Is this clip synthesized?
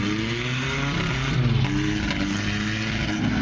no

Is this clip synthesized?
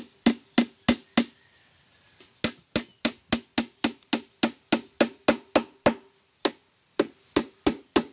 no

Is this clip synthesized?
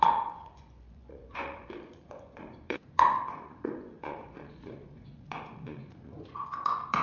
yes